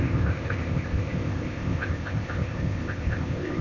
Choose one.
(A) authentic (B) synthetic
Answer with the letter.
B